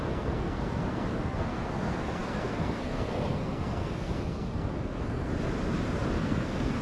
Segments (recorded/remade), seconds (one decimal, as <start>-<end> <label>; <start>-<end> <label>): 0.0-5.3 remade; 5.3-6.2 recorded; 6.2-6.8 remade